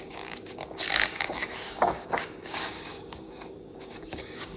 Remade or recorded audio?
remade